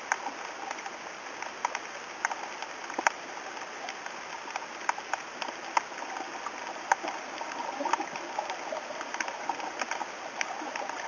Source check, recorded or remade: recorded